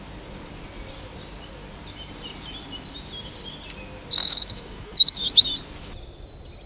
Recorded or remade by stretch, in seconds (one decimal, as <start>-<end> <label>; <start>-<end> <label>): 0.0-4.2 recorded; 4.2-5.5 remade; 5.5-6.7 recorded